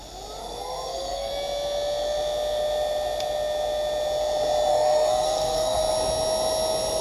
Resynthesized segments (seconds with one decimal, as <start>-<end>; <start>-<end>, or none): 0.4-1.3; 4.7-5.8